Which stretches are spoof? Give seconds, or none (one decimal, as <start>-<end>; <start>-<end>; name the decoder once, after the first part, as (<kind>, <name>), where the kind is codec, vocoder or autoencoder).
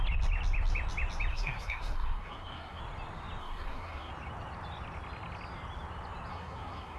1.3-2.8 (codec, SNAC); 3.4-4.1; 6.3-7.0